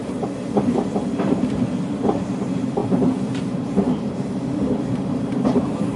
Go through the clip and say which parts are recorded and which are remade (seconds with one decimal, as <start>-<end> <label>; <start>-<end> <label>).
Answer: 0.0-6.0 remade